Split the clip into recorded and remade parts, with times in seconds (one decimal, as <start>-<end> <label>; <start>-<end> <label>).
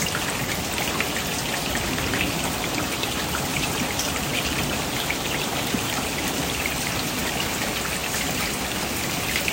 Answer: 0.0-3.5 recorded; 3.5-6.9 remade; 6.9-9.5 recorded